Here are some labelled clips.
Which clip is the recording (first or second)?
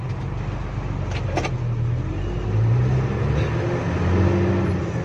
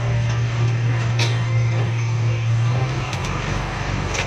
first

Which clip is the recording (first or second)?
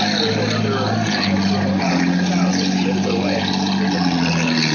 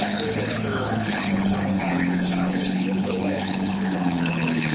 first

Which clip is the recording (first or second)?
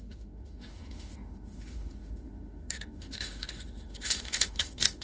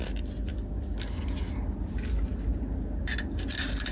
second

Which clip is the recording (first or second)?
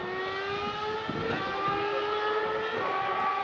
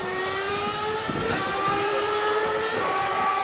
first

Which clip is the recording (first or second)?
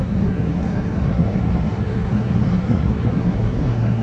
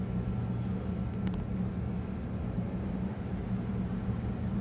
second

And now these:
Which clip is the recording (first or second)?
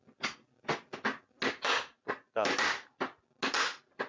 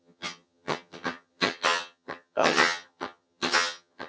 first